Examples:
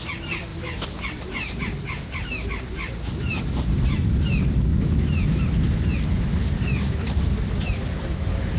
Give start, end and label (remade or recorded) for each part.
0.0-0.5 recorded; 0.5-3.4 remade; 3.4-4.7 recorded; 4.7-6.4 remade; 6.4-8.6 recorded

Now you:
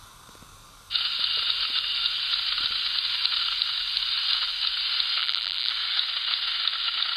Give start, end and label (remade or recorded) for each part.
0.0-5.2 recorded; 5.2-5.7 remade; 5.7-7.2 recorded

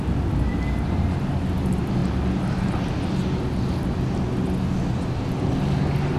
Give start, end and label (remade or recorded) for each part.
0.0-6.2 recorded

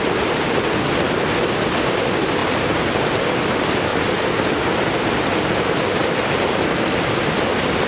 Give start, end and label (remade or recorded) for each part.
0.0-2.4 recorded; 2.4-3.5 remade; 3.5-3.9 recorded; 3.9-4.9 remade; 4.9-6.0 recorded; 6.0-6.9 remade; 6.9-7.9 recorded

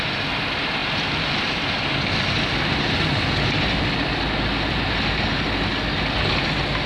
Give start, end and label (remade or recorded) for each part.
0.0-6.9 recorded

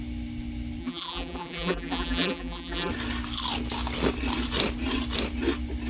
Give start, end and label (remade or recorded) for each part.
0.0-0.8 recorded; 0.8-2.9 remade; 2.9-5.9 recorded